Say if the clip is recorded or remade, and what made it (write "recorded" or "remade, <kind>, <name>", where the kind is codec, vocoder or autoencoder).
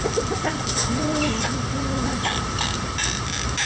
recorded